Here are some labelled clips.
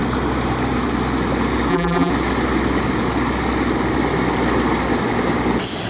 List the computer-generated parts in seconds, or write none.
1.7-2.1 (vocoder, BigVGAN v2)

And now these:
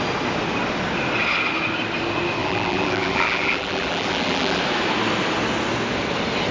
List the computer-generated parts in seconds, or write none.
2.4-4.6 (vocoder, BigVGAN v2)

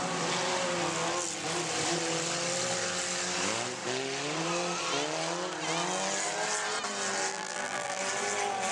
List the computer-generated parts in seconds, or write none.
7.3-8.0 (vocoder, BigVGAN v2)

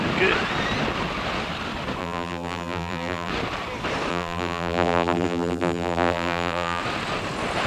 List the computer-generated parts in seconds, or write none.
2.0-3.3 (vocoder, BigVGAN v2); 4.1-6.8

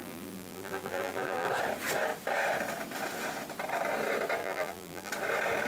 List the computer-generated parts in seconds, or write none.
0.0-1.5 (vocoder, BigVGAN v2); 4.4-5.1

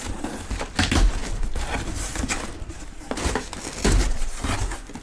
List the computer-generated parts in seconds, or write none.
none

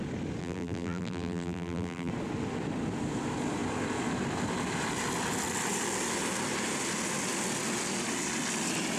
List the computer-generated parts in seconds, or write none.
0.4-2.1 (vocoder, BigVGAN v2)

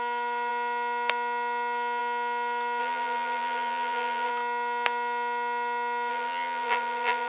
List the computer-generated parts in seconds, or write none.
2.8-4.3 (vocoder, BigVGAN v2); 6.1-7.3